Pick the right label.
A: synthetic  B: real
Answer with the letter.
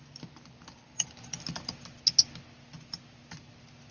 B